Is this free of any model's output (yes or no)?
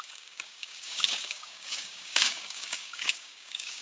no